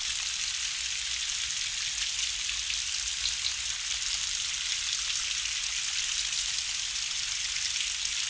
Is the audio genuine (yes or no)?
yes